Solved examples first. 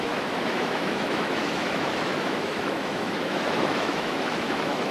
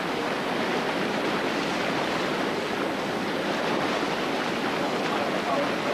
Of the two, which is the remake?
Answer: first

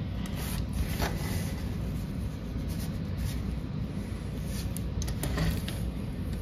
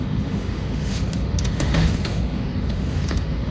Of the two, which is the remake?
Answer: second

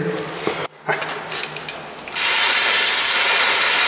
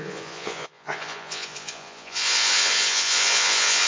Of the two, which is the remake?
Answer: second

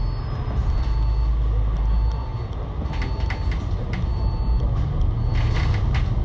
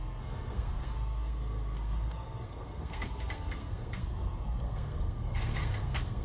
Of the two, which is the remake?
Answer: second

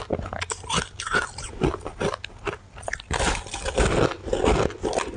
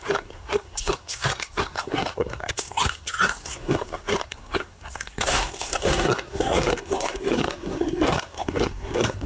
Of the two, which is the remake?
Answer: second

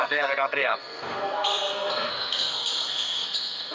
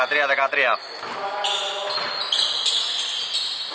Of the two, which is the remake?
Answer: first